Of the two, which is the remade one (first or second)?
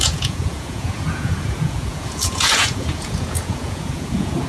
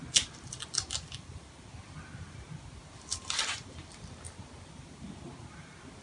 first